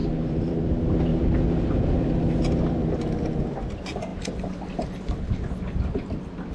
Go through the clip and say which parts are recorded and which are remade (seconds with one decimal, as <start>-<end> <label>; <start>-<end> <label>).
0.0-0.5 remade; 0.5-1.1 recorded; 1.1-2.1 remade; 2.1-6.5 recorded